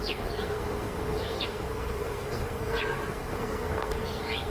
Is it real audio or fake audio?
fake